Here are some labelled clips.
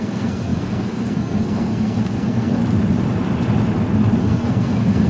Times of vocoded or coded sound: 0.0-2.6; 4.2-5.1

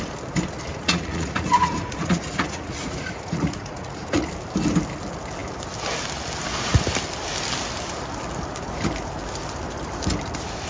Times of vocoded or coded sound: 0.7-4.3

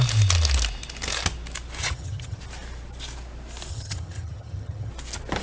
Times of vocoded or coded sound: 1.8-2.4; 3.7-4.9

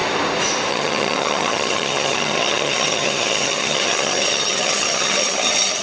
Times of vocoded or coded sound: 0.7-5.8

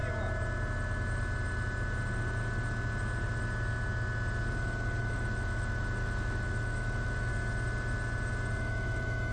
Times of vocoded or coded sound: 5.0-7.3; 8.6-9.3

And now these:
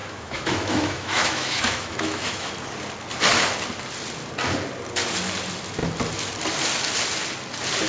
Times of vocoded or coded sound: 0.0-2.5

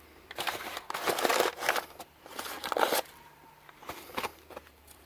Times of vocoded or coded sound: 4.3-5.1

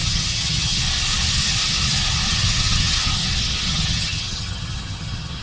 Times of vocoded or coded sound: 0.0-0.8; 2.3-3.1; 3.7-5.4